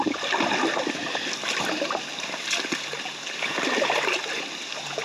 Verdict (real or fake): real